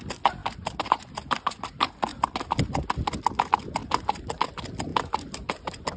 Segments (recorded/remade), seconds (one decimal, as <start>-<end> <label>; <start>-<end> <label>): 0.0-0.4 recorded; 0.4-1.6 remade; 1.6-3.8 recorded; 3.8-4.4 remade; 4.4-4.9 recorded; 4.9-6.0 remade